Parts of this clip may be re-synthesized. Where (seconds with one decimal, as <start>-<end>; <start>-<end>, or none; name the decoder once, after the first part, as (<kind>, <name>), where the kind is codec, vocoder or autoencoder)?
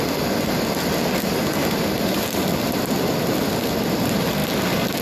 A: 1.6-2.5 (vocoder, BigVGAN v2)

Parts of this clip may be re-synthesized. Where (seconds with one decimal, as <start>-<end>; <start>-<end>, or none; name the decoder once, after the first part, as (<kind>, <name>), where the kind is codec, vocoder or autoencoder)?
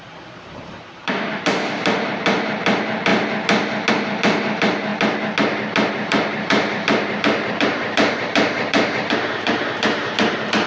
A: 0.0-3.1 (vocoder, BigVGAN v2); 3.9-4.9; 5.9-10.7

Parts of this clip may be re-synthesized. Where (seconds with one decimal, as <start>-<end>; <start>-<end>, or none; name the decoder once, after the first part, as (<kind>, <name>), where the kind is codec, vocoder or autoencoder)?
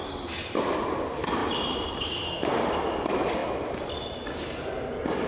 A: 1.4-2.5 (vocoder, BigVGAN v2)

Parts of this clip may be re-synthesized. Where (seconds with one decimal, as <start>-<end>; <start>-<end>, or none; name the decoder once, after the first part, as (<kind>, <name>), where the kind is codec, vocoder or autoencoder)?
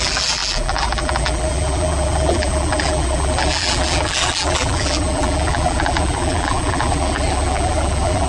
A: 0.0-8.3 (vocoder, BigVGAN v2)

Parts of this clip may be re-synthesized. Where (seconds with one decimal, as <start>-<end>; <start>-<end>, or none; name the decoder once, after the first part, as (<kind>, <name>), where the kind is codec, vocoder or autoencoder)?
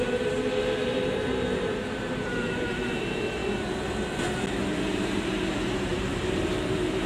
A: 0.0-3.4 (vocoder, BigVGAN v2); 4.9-7.1